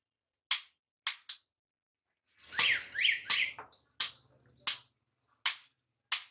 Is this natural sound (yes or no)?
yes